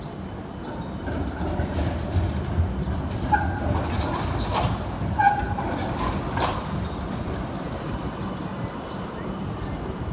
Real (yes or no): yes